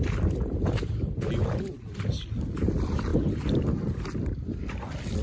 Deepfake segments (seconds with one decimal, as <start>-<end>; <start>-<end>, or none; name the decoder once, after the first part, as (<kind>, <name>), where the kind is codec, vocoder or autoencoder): none